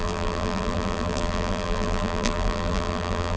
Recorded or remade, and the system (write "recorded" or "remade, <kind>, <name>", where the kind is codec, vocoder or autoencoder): remade, vocoder, BigVGAN v2